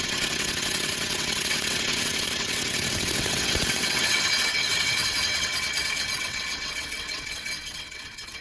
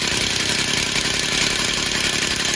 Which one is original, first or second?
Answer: second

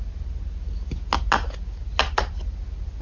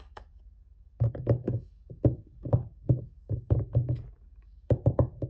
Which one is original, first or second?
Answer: first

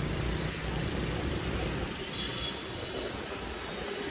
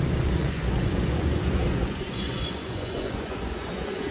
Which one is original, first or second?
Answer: first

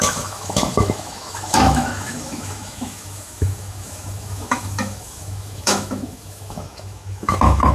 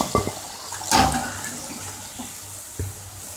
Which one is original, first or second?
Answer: second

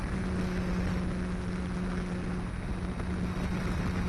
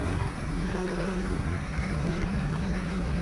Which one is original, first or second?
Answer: first